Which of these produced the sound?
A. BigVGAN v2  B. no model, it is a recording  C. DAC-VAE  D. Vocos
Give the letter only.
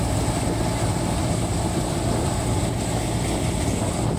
B